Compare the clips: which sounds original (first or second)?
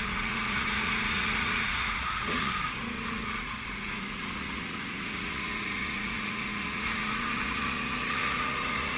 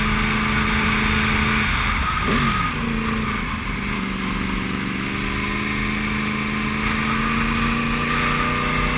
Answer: second